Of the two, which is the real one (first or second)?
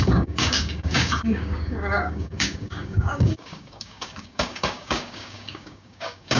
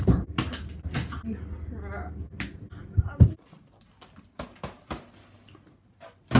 second